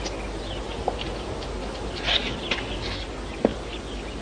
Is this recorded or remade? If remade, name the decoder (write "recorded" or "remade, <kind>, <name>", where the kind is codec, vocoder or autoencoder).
recorded